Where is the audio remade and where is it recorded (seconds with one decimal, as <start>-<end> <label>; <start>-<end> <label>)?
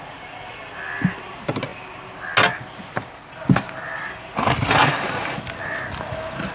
0.0-6.5 recorded